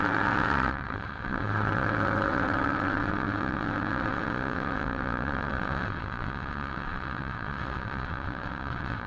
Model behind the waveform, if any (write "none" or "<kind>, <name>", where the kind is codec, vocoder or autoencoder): vocoder, WaveNeXt